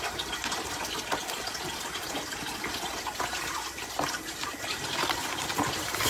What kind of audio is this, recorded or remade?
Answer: remade